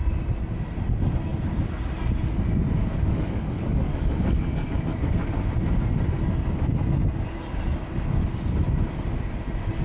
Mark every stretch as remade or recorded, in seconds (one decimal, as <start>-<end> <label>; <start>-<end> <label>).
0.0-2.8 recorded; 2.8-5.3 remade; 5.3-9.8 recorded